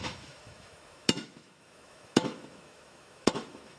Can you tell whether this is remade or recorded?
remade